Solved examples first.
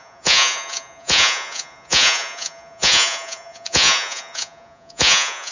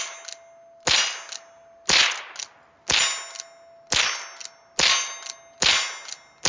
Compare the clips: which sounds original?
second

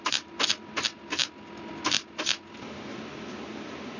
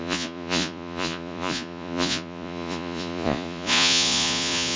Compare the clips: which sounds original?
first